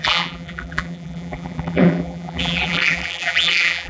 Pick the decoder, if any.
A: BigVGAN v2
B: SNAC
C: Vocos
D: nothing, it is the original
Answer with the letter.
A